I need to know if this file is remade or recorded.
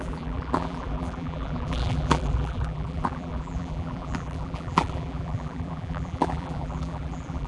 remade